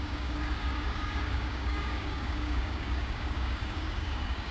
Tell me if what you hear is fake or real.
fake